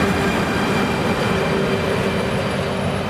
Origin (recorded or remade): recorded